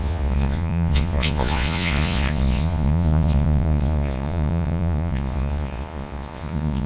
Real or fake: fake